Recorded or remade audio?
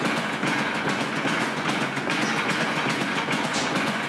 remade